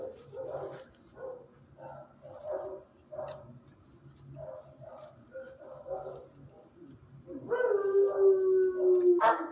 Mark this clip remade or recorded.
recorded